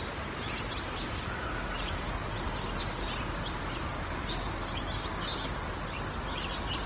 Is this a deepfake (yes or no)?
no